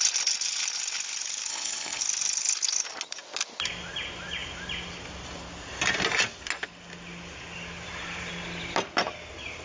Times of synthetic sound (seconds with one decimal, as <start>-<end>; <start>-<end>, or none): 1.5-2.0